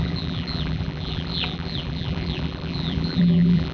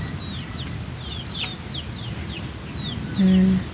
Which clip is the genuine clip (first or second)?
second